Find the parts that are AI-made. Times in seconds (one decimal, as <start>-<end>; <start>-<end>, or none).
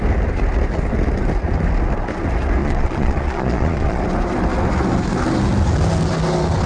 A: 2.6-4.0